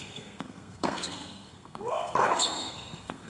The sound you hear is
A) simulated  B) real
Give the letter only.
A